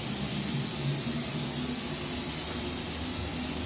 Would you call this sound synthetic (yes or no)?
no